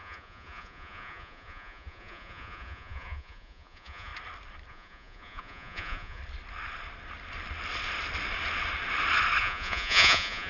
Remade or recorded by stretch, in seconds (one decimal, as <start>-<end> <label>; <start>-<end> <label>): 0.0-4.1 remade; 4.1-4.7 recorded; 4.7-6.2 remade; 6.2-9.4 recorded; 9.4-10.5 remade